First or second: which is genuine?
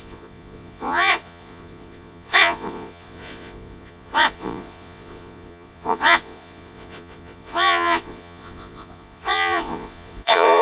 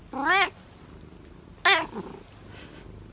second